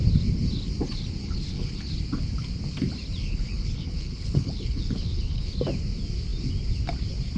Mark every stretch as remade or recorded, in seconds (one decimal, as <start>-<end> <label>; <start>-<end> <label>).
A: 0.0-1.2 recorded; 1.2-1.9 remade; 1.9-3.2 recorded; 3.2-5.5 remade; 5.5-7.4 recorded